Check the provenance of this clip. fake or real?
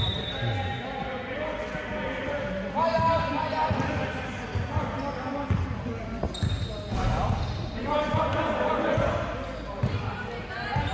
real